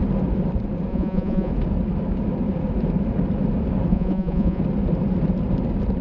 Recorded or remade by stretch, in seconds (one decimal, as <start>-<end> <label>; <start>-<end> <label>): 0.0-0.9 recorded; 0.9-1.5 remade; 1.5-3.9 recorded; 3.9-4.6 remade; 4.6-6.0 recorded